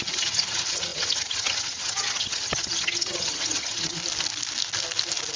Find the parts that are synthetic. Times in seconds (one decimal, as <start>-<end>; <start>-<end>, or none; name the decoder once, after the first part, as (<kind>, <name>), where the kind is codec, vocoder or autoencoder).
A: 0.0-4.0 (vocoder, HiFi-GAN)